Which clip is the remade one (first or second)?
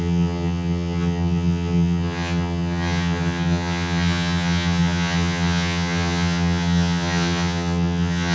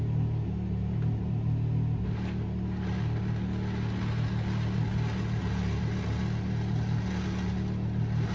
first